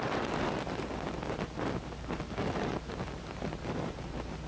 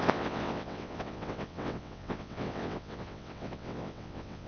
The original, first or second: first